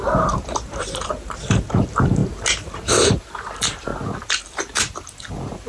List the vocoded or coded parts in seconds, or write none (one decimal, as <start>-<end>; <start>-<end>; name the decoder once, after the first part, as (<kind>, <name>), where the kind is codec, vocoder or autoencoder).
0.0-3.9 (vocoder, BigVGAN v2)